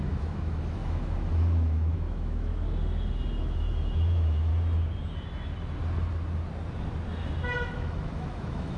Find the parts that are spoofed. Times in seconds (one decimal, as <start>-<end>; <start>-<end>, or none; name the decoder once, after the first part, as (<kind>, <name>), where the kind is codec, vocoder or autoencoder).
0.0-2.5 (autoencoder, DAC-VAE); 3.4-4.5; 7.7-8.8